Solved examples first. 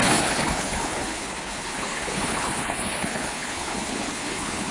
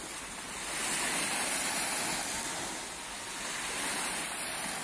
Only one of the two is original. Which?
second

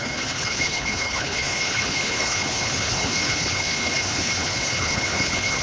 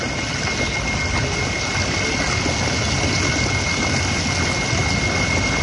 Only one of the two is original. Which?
second